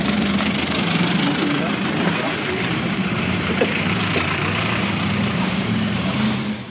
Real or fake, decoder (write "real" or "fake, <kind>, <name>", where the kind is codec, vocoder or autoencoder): fake, vocoder, BigVGAN v2